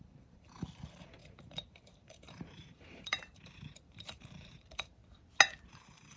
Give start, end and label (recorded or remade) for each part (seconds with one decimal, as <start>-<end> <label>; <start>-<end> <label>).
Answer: 0.0-5.0 remade; 5.0-5.7 recorded; 5.7-6.2 remade